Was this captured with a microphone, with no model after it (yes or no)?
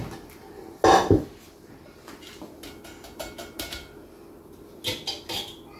yes